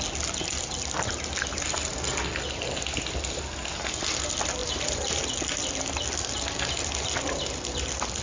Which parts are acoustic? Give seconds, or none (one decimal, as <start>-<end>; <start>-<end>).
0.0-4.6; 5.2-8.2